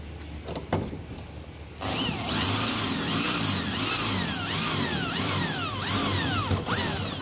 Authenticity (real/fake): real